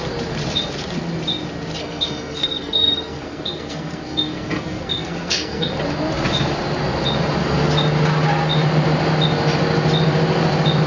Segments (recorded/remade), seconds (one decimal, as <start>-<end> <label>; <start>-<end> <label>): 0.0-1.8 recorded; 1.8-5.7 remade; 5.7-10.9 recorded